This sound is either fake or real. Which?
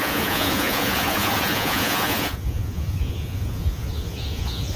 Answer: fake